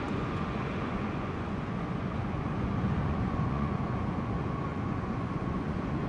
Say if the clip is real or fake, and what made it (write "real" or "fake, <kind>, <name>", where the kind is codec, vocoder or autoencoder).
fake, vocoder, Vocos